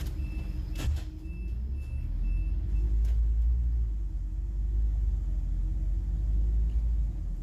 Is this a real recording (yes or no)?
yes